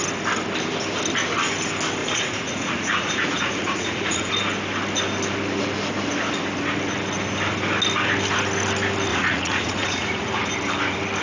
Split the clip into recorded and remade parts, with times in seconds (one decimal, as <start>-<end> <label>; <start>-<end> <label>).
0.0-2.0 recorded; 2.0-4.3 remade; 4.3-9.1 recorded; 9.1-10.5 remade; 10.5-11.2 recorded